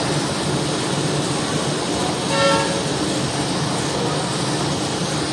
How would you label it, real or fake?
real